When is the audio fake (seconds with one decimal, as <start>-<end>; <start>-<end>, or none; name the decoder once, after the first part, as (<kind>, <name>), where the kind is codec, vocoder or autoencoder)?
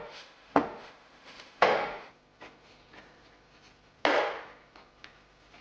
0.0-2.1 (autoencoder, DAC-VAE)